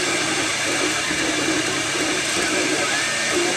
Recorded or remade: recorded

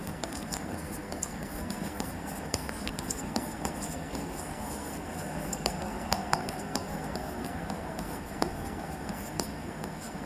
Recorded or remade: remade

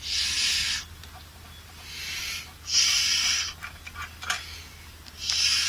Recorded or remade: recorded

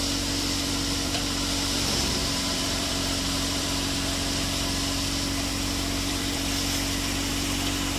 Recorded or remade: remade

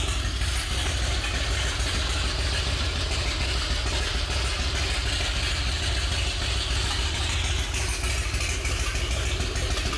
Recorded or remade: recorded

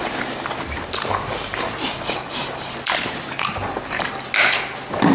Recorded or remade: recorded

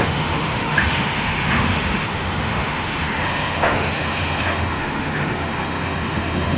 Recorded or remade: remade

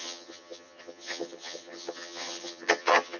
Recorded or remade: remade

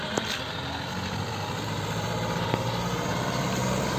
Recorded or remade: remade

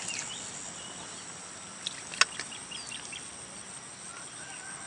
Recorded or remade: recorded